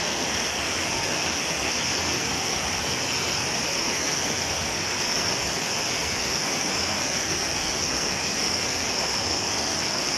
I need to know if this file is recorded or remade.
remade